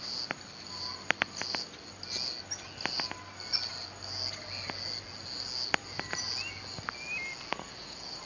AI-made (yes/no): no